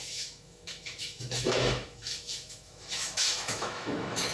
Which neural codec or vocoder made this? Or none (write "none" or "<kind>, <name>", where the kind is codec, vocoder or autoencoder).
autoencoder, DAC-VAE